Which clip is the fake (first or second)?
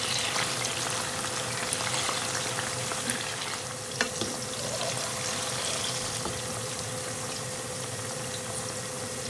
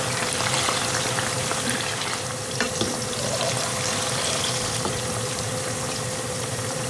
second